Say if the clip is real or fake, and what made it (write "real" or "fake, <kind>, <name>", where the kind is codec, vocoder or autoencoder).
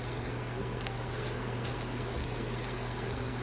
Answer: fake, codec, SNAC